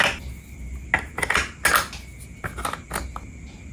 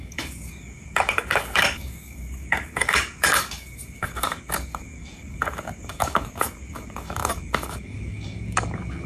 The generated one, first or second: second